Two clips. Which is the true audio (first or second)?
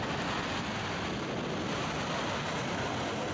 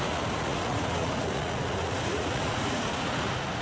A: first